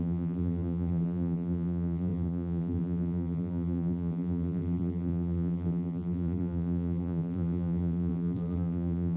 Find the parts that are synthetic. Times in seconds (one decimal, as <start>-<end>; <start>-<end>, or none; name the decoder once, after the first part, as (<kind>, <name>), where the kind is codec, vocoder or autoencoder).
0.0-9.2 (vocoder, BigVGAN v2)